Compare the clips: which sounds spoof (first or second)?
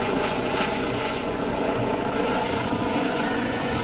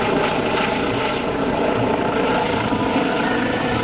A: first